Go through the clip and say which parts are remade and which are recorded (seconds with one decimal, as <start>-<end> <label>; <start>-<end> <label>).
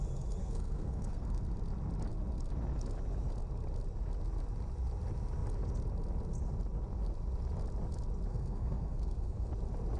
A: 0.0-0.4 recorded; 0.4-1.4 remade; 1.4-8.3 recorded; 8.3-9.5 remade; 9.5-10.0 recorded